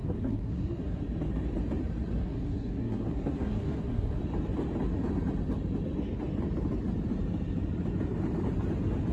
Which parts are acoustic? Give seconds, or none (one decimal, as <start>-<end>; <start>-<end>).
1.0-2.2; 4.2-9.1